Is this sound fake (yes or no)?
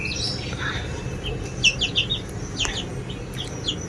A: no